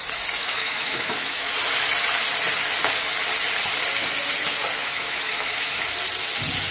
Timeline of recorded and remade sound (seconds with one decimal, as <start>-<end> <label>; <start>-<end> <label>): 0.0-0.4 recorded; 0.4-1.5 remade; 1.5-4.8 recorded; 4.8-5.8 remade; 5.8-6.7 recorded